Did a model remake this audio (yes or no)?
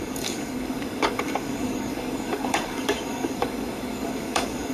yes